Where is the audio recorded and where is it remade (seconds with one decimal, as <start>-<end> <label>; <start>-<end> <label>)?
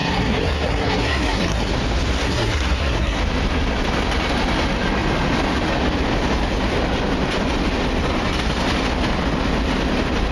0.0-1.7 remade; 1.7-2.2 recorded; 2.2-3.2 remade; 3.2-10.3 recorded